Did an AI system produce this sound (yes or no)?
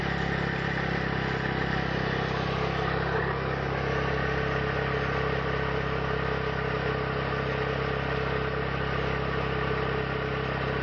no